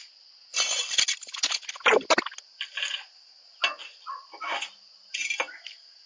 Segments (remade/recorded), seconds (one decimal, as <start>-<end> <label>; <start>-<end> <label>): 0.0-6.1 recorded